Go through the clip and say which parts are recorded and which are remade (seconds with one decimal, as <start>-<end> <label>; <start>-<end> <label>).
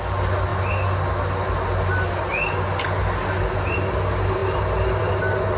0.0-5.6 recorded